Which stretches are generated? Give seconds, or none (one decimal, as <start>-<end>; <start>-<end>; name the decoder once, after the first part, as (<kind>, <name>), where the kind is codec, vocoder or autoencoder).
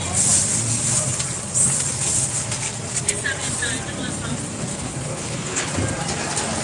4.7-5.7 (codec, HILCodec)